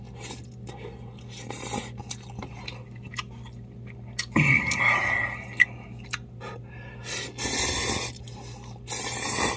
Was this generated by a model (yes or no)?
no